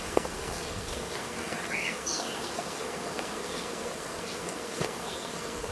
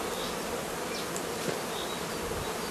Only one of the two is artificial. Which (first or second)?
first